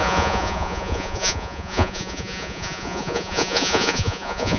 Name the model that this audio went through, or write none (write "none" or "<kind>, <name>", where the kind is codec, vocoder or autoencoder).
vocoder, Vocos